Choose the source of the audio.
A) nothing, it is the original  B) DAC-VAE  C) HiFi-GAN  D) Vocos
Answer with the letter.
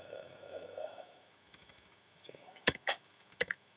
B